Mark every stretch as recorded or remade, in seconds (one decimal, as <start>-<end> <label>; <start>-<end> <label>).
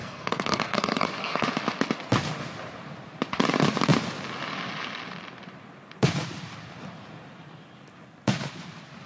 0.0-1.5 remade; 1.5-9.1 recorded